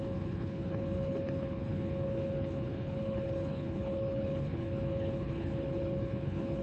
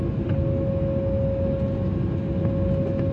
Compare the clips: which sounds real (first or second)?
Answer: second